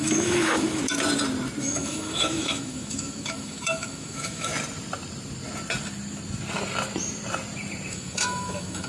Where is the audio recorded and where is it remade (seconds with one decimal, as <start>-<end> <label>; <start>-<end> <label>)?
0.0-0.8 remade; 0.8-1.6 recorded; 1.6-4.5 remade; 4.5-7.9 recorded; 7.9-8.9 remade

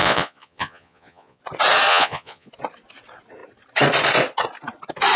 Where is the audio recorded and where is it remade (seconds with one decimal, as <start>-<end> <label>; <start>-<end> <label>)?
0.0-1.4 remade; 1.4-1.9 recorded; 1.9-2.5 remade; 2.5-5.2 recorded

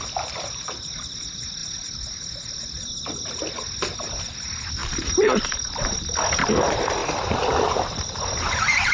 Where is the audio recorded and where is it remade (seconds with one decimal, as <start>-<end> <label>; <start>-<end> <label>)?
0.0-4.8 recorded; 4.8-5.9 remade; 5.9-7.0 recorded; 7.0-8.1 remade; 8.1-8.9 recorded